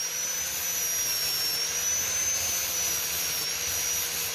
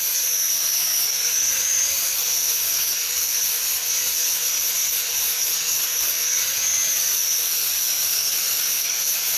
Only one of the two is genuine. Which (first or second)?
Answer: first